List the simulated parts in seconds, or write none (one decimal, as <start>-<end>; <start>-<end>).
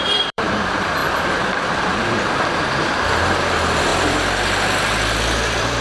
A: 0.0-5.8